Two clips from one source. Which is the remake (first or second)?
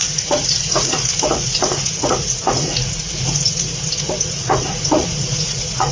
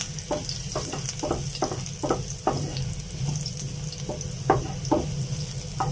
first